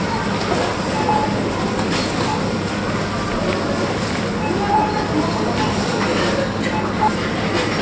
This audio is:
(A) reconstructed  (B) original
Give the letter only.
B